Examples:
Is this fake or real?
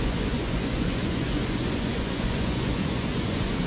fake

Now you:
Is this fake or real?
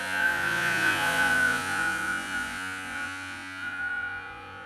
fake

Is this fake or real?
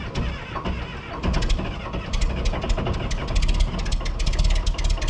real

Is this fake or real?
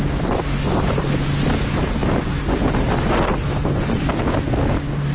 real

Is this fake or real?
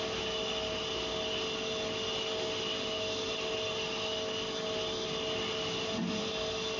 real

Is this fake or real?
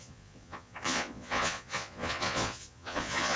fake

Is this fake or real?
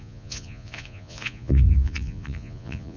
fake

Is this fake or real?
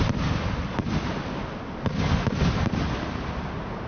real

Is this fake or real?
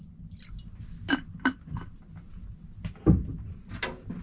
real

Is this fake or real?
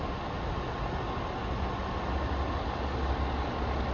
real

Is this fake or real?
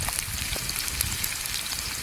real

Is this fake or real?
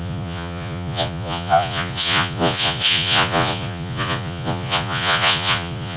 fake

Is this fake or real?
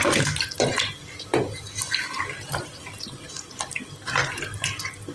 real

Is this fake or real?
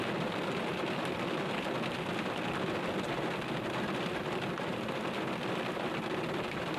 real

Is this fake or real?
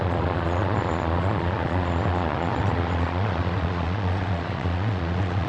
fake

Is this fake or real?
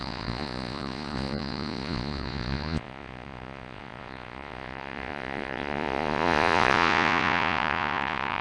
fake